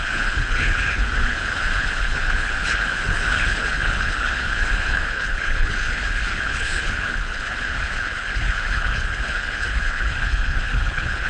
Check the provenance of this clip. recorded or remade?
remade